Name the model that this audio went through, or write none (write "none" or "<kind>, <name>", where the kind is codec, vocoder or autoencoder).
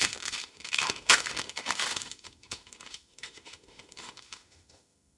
autoencoder, DAC-VAE